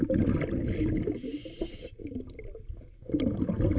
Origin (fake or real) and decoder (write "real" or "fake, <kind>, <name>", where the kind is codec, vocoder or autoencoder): real